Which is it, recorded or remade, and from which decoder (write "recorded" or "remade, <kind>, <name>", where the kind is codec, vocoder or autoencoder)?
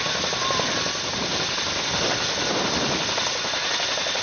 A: recorded